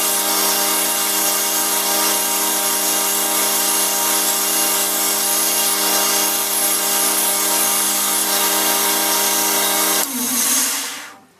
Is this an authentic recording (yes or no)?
yes